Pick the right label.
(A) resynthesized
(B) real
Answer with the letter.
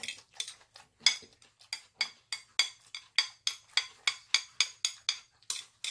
B